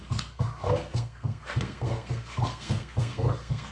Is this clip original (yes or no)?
no